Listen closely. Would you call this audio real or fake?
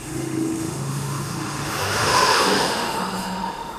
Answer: fake